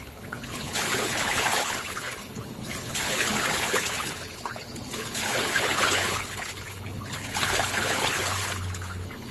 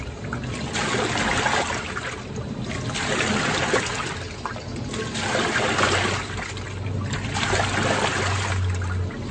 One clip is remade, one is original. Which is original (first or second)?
second